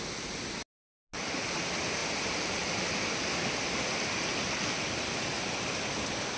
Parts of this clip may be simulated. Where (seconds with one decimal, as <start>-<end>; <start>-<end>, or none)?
none